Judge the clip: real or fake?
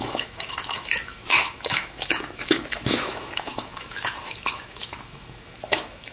fake